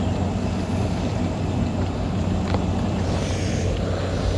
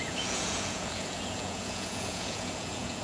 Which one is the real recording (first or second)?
first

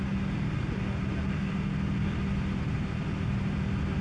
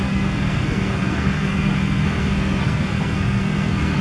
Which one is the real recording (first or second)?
first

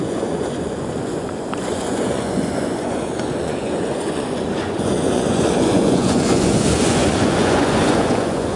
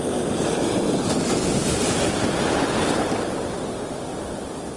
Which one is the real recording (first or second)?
second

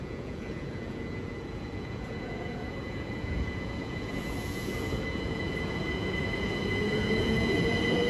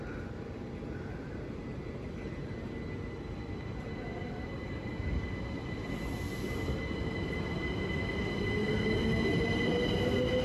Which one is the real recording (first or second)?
second